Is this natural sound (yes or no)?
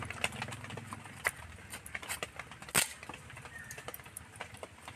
yes